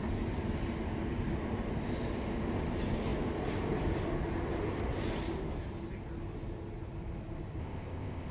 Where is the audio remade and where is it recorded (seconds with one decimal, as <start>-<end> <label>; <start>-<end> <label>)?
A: 0.0-7.6 recorded; 7.6-8.3 remade